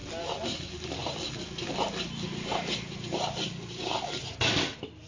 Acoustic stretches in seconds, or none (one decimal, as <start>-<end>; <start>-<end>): 0.0-5.1